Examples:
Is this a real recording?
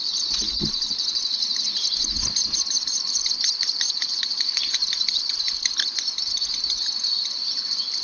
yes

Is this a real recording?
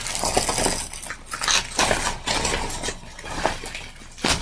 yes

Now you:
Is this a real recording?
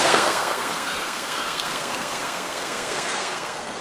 no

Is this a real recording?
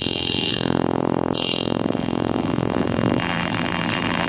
no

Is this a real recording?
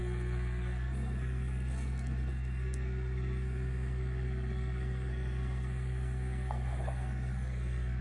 no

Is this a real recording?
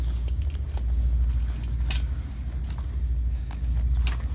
yes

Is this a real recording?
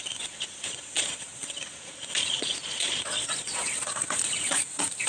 no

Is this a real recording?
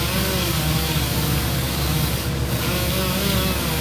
no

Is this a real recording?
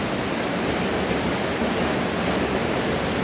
yes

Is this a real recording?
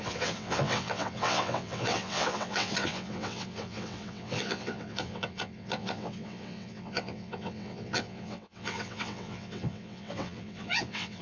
no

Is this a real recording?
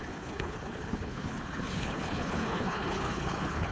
no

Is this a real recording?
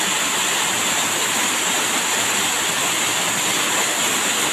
yes